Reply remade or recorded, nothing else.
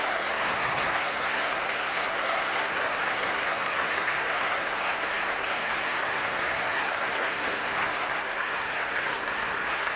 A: remade